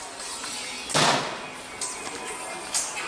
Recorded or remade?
recorded